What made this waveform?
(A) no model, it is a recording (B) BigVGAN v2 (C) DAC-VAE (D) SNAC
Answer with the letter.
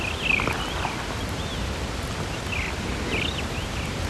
A